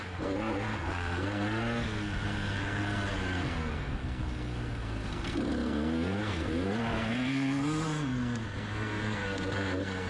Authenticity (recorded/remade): remade